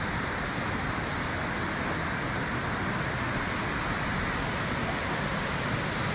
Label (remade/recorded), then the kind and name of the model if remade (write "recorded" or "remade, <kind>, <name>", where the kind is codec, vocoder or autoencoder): recorded